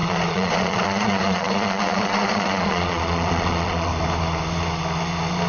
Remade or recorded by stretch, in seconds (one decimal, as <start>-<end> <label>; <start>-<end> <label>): 0.0-3.9 remade; 3.9-5.5 recorded